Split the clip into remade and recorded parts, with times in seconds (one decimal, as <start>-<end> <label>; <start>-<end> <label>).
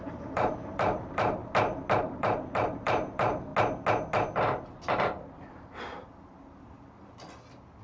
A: 0.0-1.4 remade; 1.4-2.0 recorded; 2.0-3.5 remade; 3.5-7.8 recorded